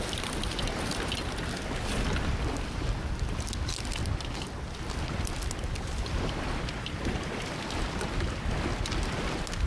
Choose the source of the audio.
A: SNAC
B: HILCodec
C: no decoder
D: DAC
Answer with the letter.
C